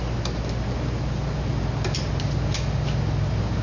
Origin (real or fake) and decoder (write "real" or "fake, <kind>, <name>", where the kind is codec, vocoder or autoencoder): real